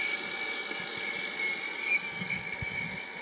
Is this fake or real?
real